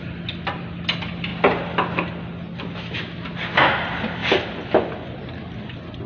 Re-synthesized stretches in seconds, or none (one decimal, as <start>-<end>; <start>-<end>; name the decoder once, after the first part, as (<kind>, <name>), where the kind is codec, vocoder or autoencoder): none